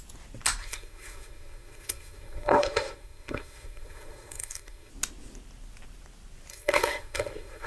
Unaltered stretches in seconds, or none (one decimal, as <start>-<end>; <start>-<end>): 0.0-0.6; 4.9-6.5